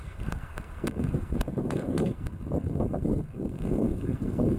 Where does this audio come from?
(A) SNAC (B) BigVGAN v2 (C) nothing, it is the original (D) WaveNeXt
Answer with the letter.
A